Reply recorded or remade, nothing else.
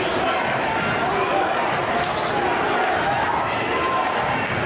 recorded